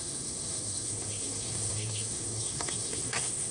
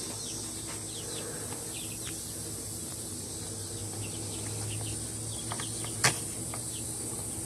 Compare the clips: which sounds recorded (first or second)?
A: second